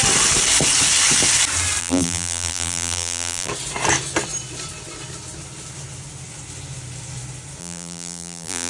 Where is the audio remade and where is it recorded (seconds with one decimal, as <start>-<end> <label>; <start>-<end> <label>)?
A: 0.0-1.8 recorded; 1.8-3.5 remade; 3.5-7.6 recorded; 7.6-8.7 remade